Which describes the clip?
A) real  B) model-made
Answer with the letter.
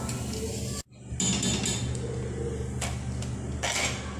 A